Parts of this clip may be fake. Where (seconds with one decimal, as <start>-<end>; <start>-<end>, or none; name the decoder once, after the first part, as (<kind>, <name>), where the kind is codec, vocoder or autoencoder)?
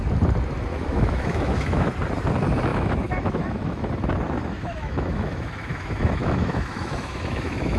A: 0.7-1.9 (autoencoder, DAC-VAE); 2.7-3.9; 4.4-7.8